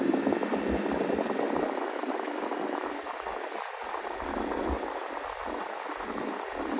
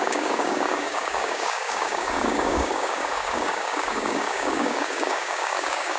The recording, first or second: first